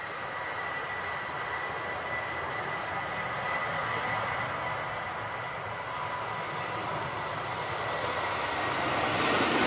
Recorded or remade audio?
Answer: recorded